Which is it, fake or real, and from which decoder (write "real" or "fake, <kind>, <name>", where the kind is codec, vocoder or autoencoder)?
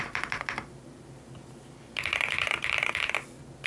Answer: real